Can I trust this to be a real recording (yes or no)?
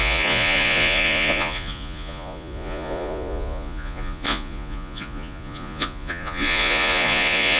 no